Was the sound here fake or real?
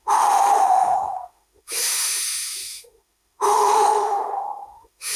fake